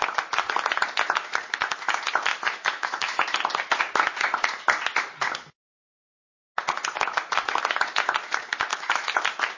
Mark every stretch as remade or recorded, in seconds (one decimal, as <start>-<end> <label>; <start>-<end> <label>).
0.0-2.3 recorded; 2.3-3.2 remade; 3.2-8.7 recorded; 8.7-9.2 remade; 9.2-9.6 recorded